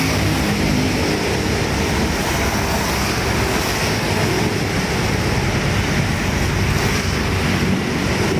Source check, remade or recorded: recorded